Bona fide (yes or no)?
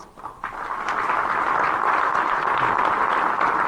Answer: yes